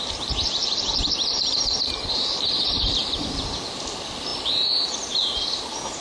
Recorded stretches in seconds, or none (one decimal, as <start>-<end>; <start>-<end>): 0.0-0.6; 3.7-4.3; 5.1-6.0